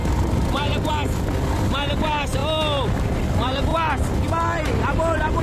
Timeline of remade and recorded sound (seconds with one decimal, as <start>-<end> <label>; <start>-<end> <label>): 0.0-0.9 remade; 0.9-5.4 recorded